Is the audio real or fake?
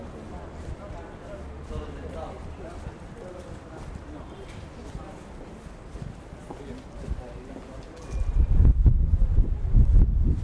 real